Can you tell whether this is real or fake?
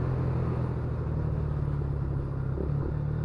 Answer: real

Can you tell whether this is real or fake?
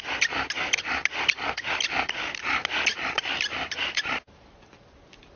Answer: real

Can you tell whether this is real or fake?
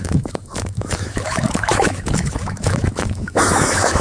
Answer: fake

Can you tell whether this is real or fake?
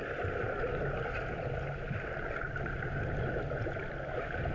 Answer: real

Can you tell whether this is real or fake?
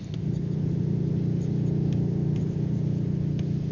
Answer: real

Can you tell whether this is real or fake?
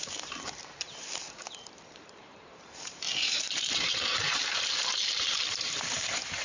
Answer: fake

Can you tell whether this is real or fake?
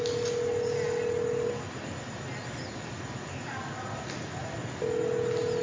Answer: real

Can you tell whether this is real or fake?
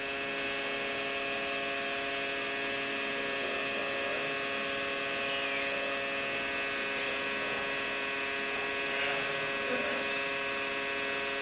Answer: real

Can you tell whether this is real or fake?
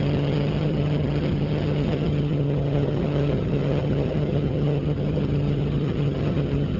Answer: fake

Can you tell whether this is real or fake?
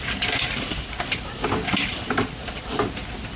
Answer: real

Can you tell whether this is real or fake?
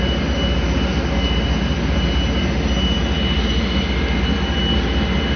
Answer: real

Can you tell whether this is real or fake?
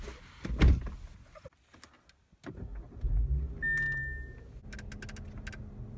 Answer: real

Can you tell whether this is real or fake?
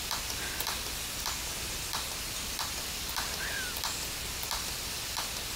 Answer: fake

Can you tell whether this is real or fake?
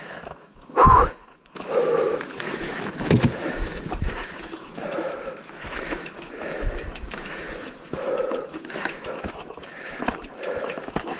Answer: fake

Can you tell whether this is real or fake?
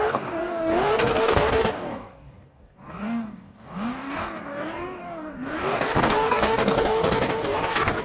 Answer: fake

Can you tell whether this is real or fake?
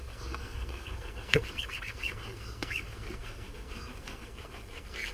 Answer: fake